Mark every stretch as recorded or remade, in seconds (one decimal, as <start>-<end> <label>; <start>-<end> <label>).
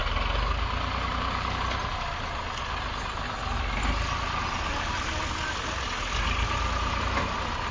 0.0-7.7 recorded